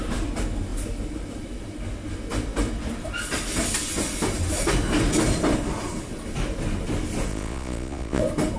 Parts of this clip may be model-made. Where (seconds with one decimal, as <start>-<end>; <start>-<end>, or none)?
7.3-8.2